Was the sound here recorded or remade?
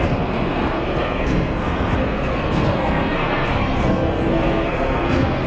remade